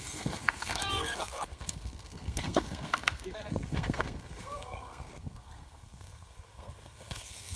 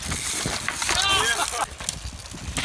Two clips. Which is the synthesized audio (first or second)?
first